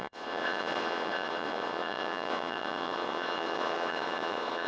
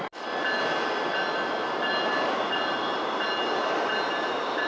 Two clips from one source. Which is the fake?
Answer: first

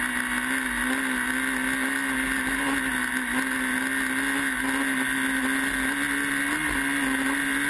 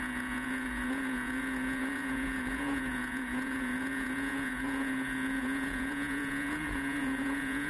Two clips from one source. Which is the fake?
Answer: second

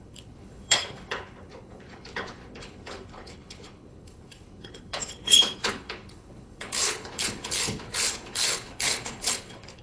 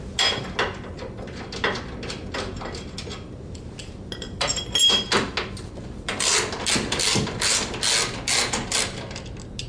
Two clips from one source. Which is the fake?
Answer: first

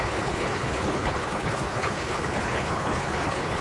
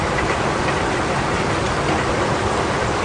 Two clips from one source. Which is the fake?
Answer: first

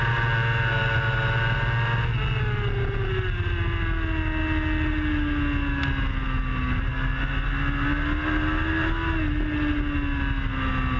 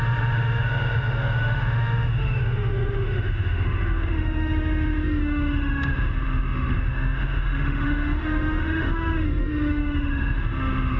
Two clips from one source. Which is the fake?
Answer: second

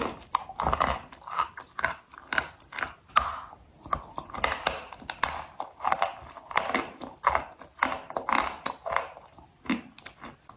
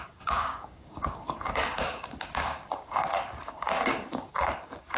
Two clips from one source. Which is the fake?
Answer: second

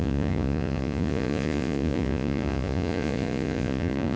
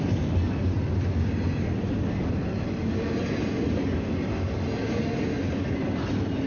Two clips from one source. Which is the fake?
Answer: first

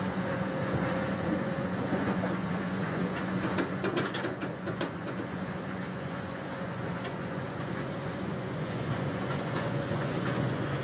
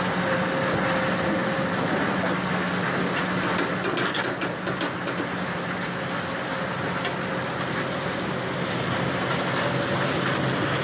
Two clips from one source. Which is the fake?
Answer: first